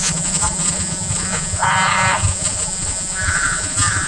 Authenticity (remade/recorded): remade